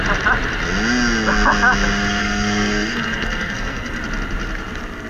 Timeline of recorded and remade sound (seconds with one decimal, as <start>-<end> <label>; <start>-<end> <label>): 0.0-2.2 recorded; 2.2-4.0 remade; 4.0-5.1 recorded